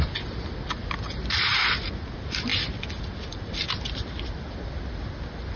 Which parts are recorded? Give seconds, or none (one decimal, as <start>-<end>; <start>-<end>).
0.0-5.6